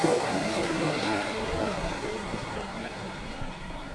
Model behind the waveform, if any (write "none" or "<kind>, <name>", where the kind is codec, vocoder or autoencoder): codec, SNAC